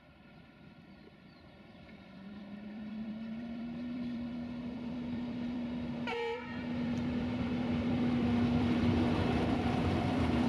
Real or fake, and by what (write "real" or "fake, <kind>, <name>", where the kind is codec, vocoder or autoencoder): fake, vocoder, BigVGAN v2